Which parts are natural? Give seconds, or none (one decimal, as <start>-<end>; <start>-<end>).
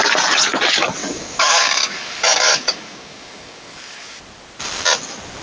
0.0-1.0; 4.2-5.4